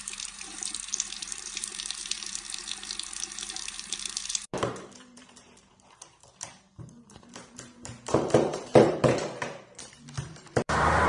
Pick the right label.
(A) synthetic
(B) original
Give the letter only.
A